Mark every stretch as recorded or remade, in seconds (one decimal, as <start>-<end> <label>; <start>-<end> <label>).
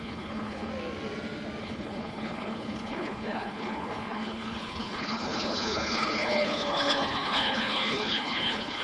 0.0-0.7 remade; 0.7-1.6 recorded; 1.6-8.8 remade